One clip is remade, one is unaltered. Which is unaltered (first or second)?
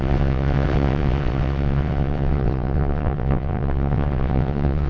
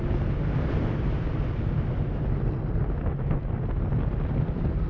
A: second